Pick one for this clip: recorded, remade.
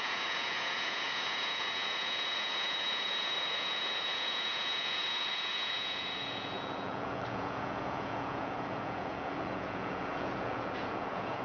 remade